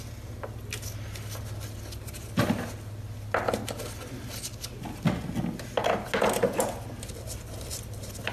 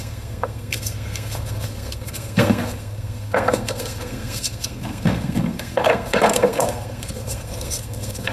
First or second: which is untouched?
first